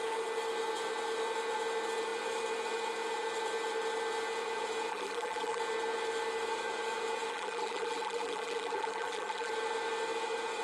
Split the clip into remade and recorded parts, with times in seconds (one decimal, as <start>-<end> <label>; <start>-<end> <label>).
0.0-4.9 recorded; 4.9-5.6 remade; 5.6-7.3 recorded; 7.3-9.5 remade; 9.5-10.6 recorded